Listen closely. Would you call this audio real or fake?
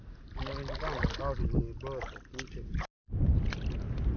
real